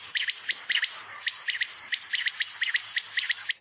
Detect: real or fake real